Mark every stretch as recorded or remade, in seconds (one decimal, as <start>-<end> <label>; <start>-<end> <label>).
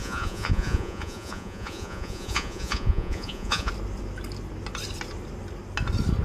0.0-3.7 remade; 3.7-6.2 recorded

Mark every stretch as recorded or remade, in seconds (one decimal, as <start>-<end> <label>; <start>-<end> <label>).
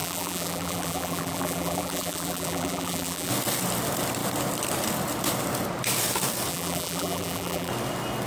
0.0-3.3 remade; 3.3-6.5 recorded; 6.5-7.7 remade; 7.7-8.3 recorded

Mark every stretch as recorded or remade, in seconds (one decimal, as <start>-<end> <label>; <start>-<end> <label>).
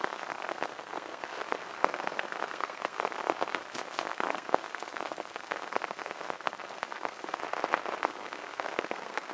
0.0-7.4 remade; 7.4-8.0 recorded; 8.0-9.3 remade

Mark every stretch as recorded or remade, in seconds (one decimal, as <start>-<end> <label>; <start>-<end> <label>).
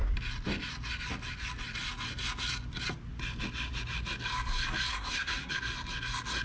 0.0-4.9 recorded; 4.9-5.5 remade; 5.5-6.4 recorded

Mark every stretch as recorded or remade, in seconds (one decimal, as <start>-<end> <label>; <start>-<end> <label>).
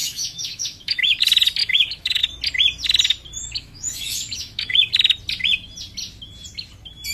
0.0-1.2 remade; 1.2-1.6 recorded; 1.6-2.2 remade; 2.2-3.4 recorded; 3.4-4.9 remade; 4.9-7.1 recorded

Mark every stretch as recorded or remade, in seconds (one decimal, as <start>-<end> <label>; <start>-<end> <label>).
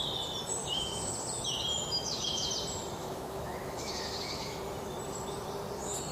0.0-0.6 recorded; 0.6-1.1 remade; 1.1-1.7 recorded; 1.7-2.5 remade; 2.5-3.0 recorded; 3.0-4.6 remade; 4.6-6.1 recorded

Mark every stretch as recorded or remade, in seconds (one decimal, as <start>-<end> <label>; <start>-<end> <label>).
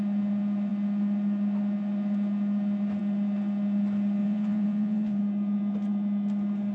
0.0-4.2 recorded; 4.2-5.2 remade; 5.2-6.7 recorded